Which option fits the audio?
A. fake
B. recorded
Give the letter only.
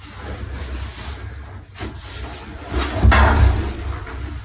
B